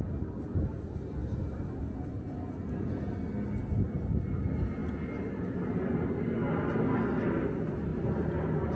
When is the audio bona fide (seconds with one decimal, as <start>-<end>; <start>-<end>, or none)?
0.0-8.8